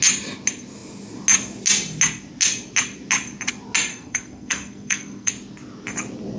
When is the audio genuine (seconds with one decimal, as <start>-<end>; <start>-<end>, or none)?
0.0-3.9; 5.3-6.4